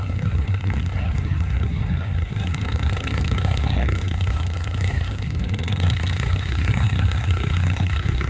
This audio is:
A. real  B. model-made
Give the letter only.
B